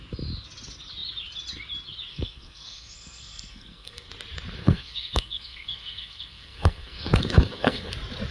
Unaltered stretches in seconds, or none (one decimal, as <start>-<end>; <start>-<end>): 0.0-2.1; 4.1-4.6; 7.9-8.3